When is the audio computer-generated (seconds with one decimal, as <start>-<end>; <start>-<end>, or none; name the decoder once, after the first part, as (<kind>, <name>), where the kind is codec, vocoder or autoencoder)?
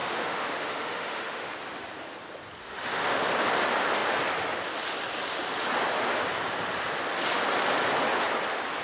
0.0-1.5 (autoencoder, DAC-VAE); 2.6-3.3